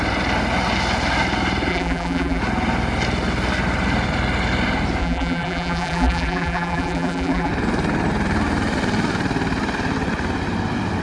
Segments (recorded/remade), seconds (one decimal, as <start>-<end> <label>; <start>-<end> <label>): 0.0-1.7 recorded; 1.7-2.4 remade; 2.4-5.0 recorded; 5.0-7.5 remade; 7.5-11.0 recorded